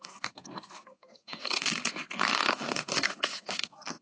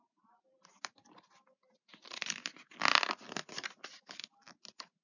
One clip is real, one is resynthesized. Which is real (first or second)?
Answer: second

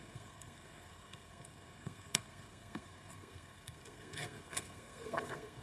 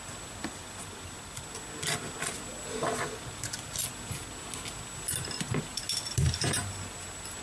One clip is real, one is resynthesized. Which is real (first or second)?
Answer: second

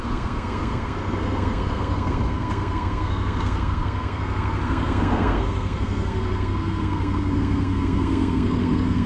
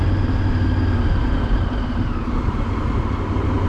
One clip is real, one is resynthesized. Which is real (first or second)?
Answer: second